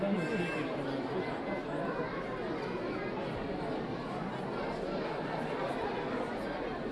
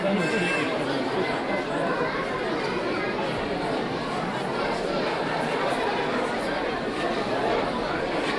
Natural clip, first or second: first